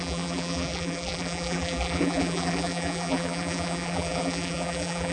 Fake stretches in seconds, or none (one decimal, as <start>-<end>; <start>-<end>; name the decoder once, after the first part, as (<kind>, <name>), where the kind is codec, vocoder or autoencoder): 0.0-5.1 (vocoder, BigVGAN v2)